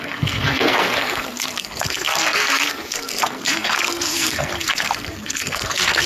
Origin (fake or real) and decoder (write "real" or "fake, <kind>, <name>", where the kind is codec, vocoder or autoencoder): fake, codec, SNAC